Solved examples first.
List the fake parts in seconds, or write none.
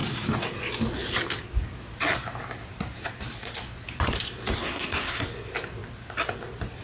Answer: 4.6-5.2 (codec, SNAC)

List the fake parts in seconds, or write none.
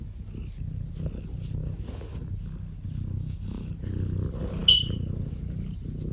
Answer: 3.2-3.7 (codec, DAC)